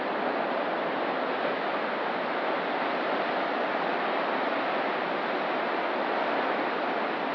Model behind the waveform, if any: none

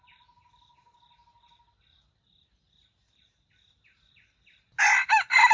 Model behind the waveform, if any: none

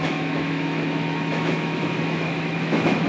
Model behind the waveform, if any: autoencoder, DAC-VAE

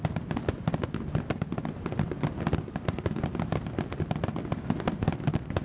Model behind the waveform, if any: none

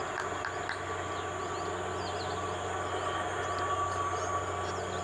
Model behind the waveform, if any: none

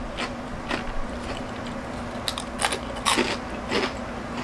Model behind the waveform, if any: none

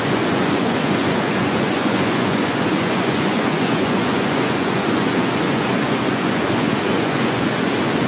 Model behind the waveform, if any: vocoder, Vocos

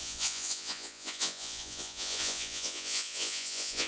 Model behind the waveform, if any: vocoder, Vocos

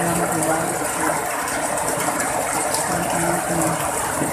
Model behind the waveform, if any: none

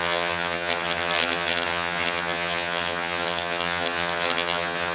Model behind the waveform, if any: vocoder, HiFi-GAN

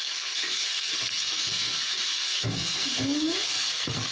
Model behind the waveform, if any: codec, SNAC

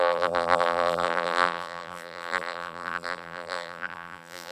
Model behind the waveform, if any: vocoder, BigVGAN v2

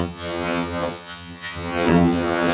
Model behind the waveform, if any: vocoder, HiFi-GAN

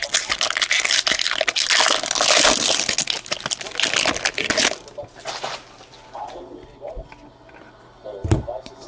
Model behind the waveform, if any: none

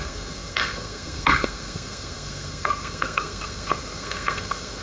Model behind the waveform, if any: codec, SNAC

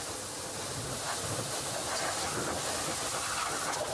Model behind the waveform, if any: none